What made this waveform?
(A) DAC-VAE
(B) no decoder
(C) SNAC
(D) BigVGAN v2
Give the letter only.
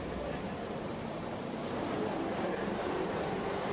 D